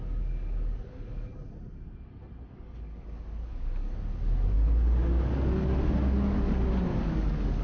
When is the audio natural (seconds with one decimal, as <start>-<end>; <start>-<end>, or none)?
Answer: 1.3-2.5